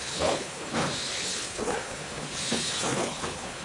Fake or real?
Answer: fake